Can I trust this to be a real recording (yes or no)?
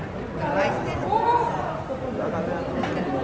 yes